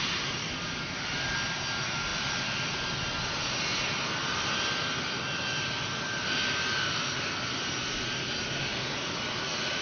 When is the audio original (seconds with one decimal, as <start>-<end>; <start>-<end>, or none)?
0.0-0.4; 1.0-9.8